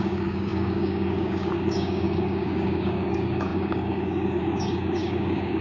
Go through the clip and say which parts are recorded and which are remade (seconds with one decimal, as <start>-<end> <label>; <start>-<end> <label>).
0.0-5.6 remade